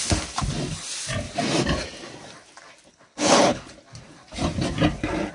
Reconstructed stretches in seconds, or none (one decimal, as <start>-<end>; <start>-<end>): 2.9-3.7